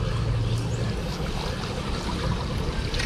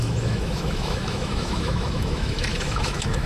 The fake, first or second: second